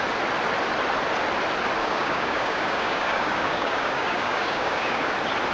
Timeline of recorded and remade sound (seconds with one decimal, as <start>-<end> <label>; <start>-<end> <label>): 0.0-1.8 recorded; 1.8-5.1 remade; 5.1-5.5 recorded